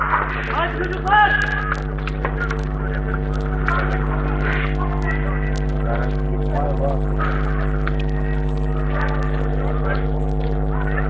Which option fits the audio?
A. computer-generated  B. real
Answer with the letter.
B